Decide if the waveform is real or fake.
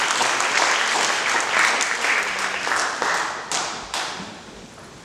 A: real